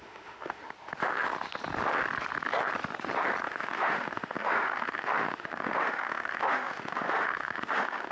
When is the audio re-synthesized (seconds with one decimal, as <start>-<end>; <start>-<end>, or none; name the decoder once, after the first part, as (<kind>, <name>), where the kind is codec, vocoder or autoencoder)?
0.0-0.6 (autoencoder, DAC-VAE); 3.4-8.1